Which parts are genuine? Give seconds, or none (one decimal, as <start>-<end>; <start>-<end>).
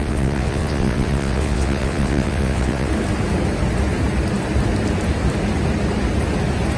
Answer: 2.9-6.8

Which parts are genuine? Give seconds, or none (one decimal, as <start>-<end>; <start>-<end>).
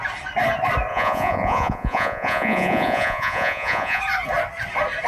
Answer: 0.0-0.9; 4.0-5.1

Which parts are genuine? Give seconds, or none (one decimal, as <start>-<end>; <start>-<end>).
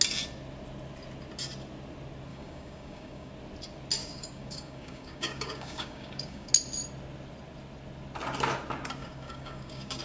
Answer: 0.0-2.3; 3.3-4.0; 6.5-9.0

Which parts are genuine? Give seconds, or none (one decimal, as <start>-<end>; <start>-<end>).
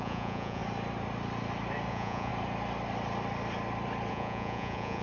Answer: 0.6-1.9; 2.3-4.1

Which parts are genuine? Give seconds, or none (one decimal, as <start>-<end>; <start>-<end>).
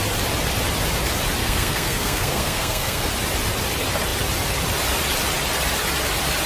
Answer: 0.0-1.4; 3.1-6.5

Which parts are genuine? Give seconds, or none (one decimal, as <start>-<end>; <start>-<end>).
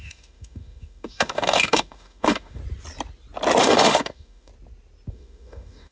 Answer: 2.6-3.6; 4.5-5.1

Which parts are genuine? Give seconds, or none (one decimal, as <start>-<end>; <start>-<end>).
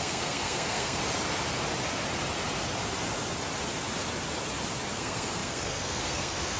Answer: 1.0-4.9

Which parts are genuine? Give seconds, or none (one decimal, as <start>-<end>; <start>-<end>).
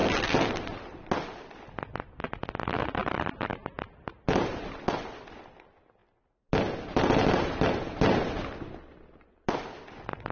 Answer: 0.0-10.3